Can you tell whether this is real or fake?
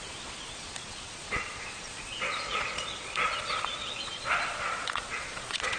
fake